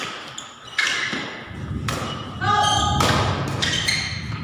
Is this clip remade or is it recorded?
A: recorded